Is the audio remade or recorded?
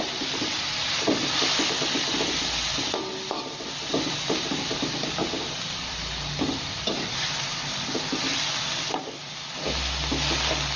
remade